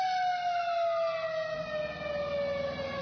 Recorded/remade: recorded